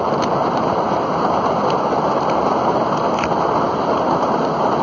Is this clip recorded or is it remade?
recorded